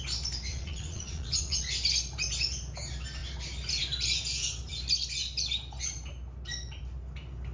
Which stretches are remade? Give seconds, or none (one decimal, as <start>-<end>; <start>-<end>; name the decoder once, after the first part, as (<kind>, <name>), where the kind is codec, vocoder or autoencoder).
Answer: 0.5-1.6 (vocoder, Vocos)